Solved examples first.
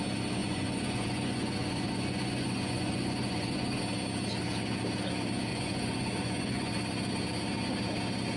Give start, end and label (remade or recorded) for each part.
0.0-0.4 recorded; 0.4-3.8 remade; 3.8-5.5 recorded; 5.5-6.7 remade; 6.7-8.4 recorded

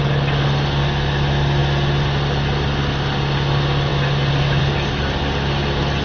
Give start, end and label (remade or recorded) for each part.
0.0-6.0 recorded

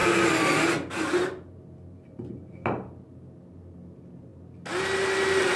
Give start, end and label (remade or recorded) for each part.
0.0-5.6 recorded

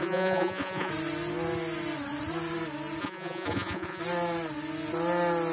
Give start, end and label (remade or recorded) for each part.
0.0-0.9 remade; 0.9-3.0 recorded; 3.0-4.0 remade; 4.0-5.5 recorded